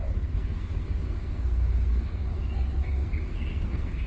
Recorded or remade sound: remade